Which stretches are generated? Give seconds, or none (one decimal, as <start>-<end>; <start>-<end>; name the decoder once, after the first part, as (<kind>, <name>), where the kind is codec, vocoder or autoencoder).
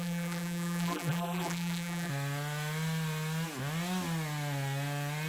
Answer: 0.0-2.1 (vocoder, BigVGAN v2)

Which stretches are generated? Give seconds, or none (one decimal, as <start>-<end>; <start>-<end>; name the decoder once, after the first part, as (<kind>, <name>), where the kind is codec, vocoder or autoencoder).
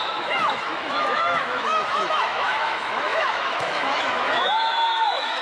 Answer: 0.0-5.4 (autoencoder, DAC-VAE)